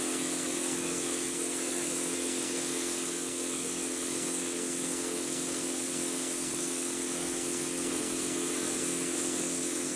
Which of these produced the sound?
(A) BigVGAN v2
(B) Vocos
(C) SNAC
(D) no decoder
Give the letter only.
C